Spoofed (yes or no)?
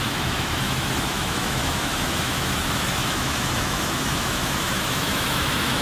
yes